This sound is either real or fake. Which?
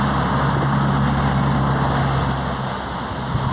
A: real